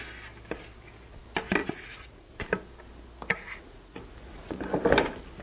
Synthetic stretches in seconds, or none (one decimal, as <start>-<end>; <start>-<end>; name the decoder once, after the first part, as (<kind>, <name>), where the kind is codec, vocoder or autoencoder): 1.6-2.3 (vocoder, Vocos); 3.3-4.6